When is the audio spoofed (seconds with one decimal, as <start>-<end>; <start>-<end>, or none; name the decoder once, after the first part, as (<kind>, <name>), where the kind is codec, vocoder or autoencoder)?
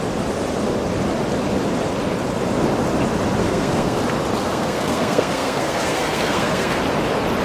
3.4-4.0 (codec, SNAC); 4.4-6.8